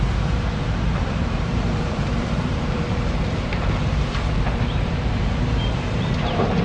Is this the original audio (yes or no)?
no